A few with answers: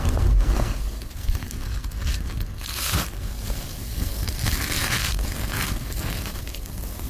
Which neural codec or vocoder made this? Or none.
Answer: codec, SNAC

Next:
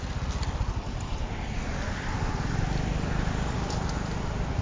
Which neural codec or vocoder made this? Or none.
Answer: none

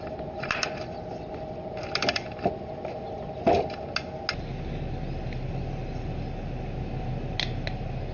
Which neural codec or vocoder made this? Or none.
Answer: none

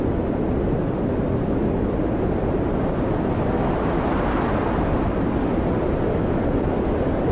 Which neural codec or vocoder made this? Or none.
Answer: none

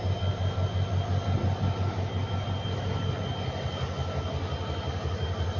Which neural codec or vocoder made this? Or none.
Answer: none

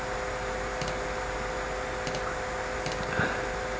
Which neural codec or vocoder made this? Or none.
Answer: none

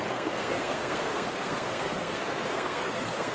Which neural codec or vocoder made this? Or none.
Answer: codec, SNAC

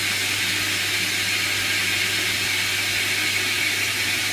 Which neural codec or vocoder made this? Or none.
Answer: none